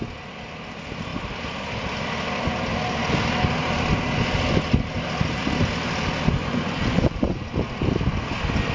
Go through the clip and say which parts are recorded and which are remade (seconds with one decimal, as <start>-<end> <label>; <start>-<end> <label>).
0.0-6.4 recorded; 6.4-7.5 remade; 7.5-8.7 recorded